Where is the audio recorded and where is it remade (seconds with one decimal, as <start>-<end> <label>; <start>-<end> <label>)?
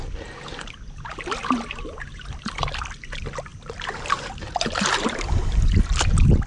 0.0-3.5 recorded; 3.5-5.5 remade; 5.5-6.5 recorded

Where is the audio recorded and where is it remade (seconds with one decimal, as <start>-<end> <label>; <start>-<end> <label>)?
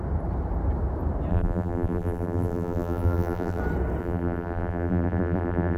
0.0-1.3 recorded; 1.3-3.6 remade; 3.6-4.0 recorded; 4.0-5.8 remade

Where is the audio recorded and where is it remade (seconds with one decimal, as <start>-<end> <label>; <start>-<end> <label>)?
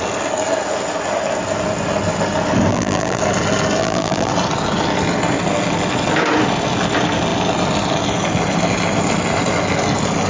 0.0-2.7 recorded; 2.7-3.2 remade; 3.2-3.8 recorded; 3.8-4.3 remade; 4.3-10.3 recorded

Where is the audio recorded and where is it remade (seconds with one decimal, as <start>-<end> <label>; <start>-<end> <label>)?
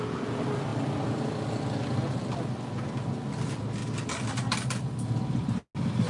0.0-0.7 recorded; 0.7-3.2 remade; 3.2-6.1 recorded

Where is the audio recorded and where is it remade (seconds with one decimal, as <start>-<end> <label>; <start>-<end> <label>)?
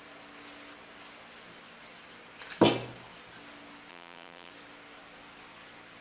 0.0-3.9 recorded; 3.9-4.5 remade; 4.5-6.0 recorded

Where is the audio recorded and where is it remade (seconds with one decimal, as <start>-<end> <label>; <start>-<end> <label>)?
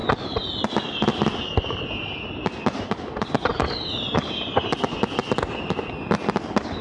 0.0-6.8 recorded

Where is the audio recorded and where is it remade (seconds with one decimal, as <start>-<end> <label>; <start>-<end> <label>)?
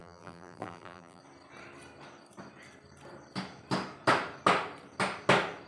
0.0-1.2 remade; 1.2-5.7 recorded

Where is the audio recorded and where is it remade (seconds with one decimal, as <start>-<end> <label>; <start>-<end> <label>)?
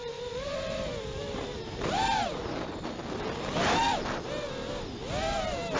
0.0-2.2 remade; 2.2-5.8 recorded